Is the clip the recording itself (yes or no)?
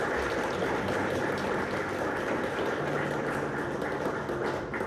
yes